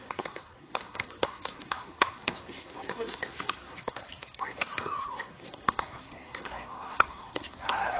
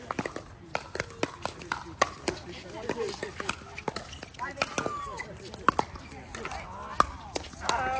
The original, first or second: second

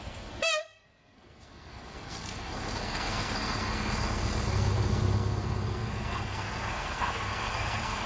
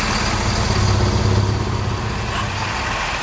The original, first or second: second